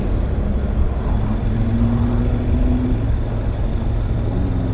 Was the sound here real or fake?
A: real